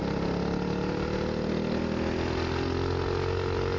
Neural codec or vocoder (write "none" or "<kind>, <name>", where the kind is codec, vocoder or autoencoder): none